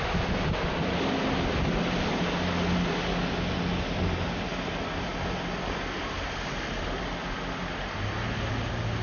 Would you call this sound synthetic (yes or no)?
no